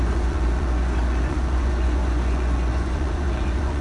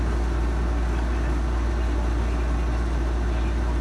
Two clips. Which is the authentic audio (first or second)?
second